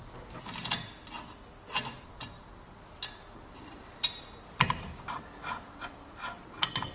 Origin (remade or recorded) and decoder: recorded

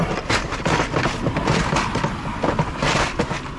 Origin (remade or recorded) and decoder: recorded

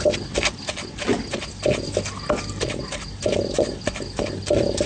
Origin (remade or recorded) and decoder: recorded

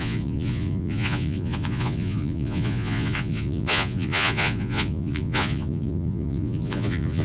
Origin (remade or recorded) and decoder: remade, vocoder, Vocos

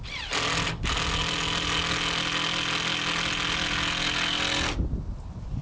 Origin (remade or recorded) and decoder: recorded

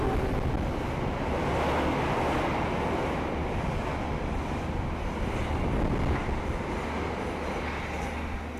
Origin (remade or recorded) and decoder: recorded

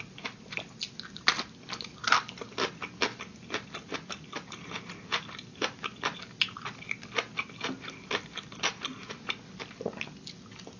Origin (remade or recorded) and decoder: recorded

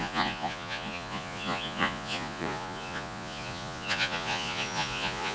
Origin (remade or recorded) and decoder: remade, vocoder, Vocos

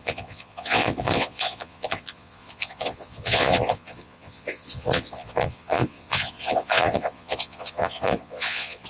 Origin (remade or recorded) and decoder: remade, vocoder, Vocos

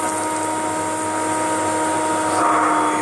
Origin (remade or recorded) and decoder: recorded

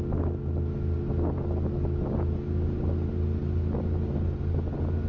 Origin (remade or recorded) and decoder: recorded